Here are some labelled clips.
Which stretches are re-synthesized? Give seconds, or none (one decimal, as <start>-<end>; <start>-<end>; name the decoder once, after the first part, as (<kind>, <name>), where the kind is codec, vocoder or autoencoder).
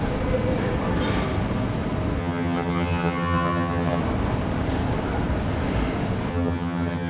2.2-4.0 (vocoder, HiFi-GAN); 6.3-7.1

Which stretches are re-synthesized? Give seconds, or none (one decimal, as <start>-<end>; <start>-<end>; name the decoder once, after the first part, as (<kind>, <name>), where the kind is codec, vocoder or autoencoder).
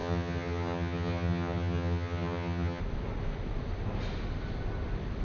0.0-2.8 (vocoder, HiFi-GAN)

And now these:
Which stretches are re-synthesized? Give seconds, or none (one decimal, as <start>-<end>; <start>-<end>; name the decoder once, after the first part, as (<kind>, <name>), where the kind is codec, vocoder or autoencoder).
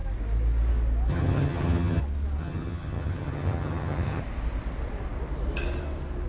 1.1-2.0 (vocoder, HiFi-GAN); 2.4-4.2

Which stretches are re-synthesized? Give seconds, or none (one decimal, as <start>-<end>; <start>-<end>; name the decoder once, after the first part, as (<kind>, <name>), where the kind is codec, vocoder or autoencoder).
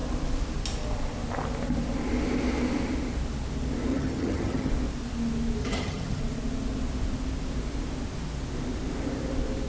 3.9-4.7 (vocoder, HiFi-GAN); 5.6-6.2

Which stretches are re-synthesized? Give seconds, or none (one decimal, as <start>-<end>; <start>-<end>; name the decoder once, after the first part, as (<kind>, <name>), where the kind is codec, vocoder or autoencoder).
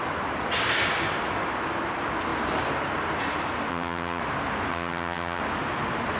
3.7-4.2 (vocoder, HiFi-GAN); 4.7-5.4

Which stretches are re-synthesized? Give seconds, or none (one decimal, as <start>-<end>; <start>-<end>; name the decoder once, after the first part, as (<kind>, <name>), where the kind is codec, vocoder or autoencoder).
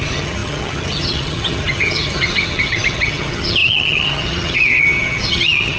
0.0-5.8 (vocoder, HiFi-GAN)